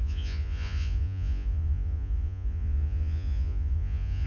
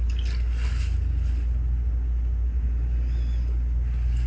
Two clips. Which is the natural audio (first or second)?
second